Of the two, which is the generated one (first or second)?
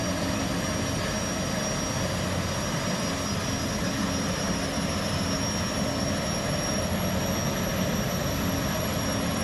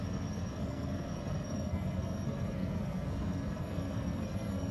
second